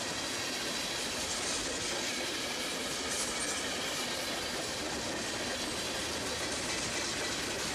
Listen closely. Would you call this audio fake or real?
real